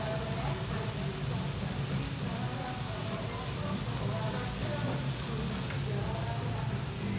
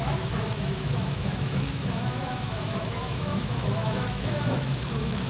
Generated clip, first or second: second